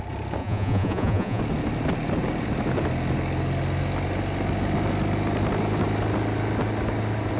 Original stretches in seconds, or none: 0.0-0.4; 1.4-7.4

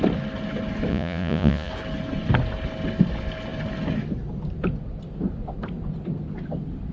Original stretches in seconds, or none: 0.0-0.9; 1.7-6.9

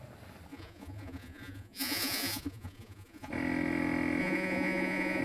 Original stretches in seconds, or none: 0.0-0.5; 3.3-4.2

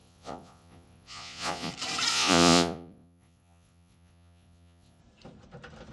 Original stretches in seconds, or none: 1.7-2.1; 5.0-5.9

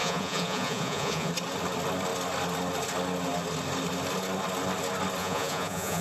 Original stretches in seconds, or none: 1.3-5.2

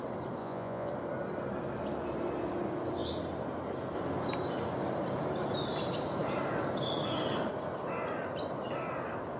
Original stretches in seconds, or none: 0.0-0.4; 0.9-9.4

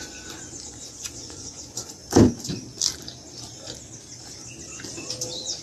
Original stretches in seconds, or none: 2.0-5.6